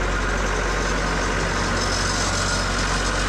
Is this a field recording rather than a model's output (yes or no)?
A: yes